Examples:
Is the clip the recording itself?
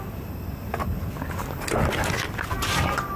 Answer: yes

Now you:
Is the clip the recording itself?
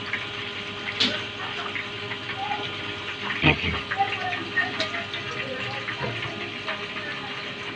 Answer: yes